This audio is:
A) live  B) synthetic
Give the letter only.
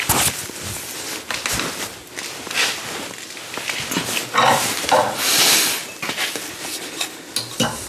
A